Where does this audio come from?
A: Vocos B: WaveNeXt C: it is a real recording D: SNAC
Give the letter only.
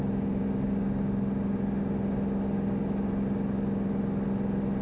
C